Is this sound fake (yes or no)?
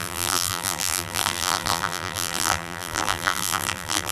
yes